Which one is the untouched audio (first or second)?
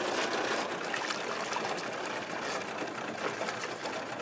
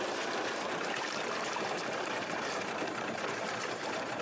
first